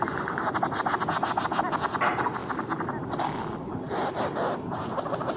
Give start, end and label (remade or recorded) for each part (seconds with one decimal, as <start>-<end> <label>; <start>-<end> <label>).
0.0-5.4 recorded